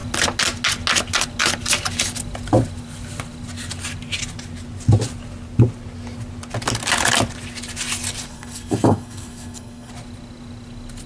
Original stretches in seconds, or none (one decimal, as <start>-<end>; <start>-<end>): 0.0-8.3; 9.9-11.1